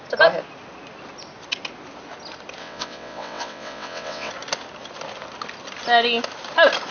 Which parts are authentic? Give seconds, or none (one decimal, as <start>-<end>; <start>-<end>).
0.0-2.6; 4.3-6.9